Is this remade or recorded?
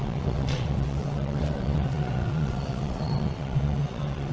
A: remade